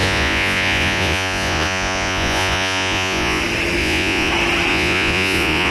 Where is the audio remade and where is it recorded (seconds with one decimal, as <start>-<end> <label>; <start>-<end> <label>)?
0.0-3.4 remade; 3.4-3.8 recorded; 3.8-4.3 remade; 4.3-4.7 recorded; 4.7-5.7 remade